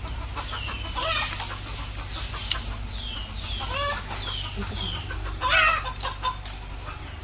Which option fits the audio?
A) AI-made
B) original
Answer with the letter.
B